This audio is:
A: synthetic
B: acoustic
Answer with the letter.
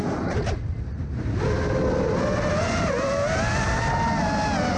B